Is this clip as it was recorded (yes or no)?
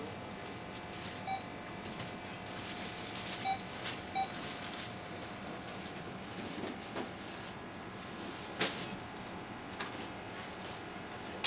yes